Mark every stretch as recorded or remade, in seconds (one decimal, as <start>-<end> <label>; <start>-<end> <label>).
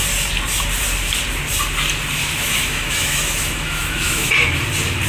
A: 0.0-2.2 recorded; 2.2-4.3 remade; 4.3-5.1 recorded